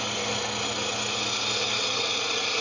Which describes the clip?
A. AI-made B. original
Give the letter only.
B